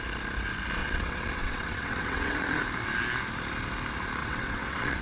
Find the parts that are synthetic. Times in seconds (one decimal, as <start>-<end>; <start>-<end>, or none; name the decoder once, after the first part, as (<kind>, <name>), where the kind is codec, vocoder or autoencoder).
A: 0.8-2.6 (vocoder, WaveNeXt); 4.2-5.0